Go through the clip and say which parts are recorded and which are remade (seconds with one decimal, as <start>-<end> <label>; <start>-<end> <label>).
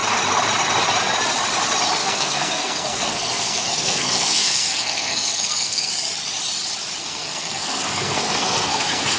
0.0-2.0 recorded; 2.0-5.9 remade; 5.9-7.0 recorded; 7.0-9.2 remade